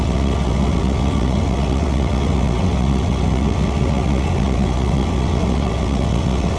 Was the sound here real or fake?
fake